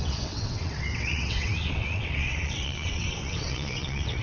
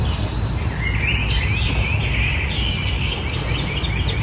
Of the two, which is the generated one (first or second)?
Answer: first